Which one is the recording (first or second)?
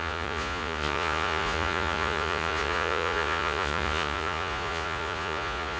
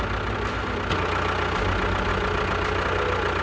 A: second